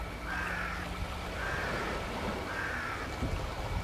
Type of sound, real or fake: real